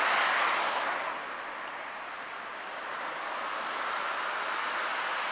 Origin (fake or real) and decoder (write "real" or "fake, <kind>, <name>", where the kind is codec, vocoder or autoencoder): real